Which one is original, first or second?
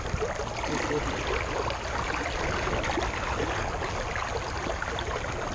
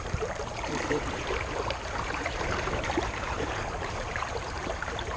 first